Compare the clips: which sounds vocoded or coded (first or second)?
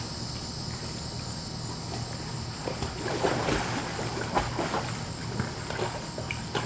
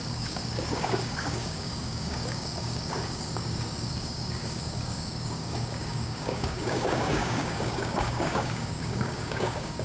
second